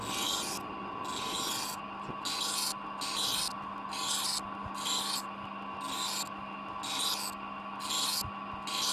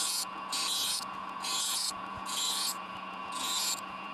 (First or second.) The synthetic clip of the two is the second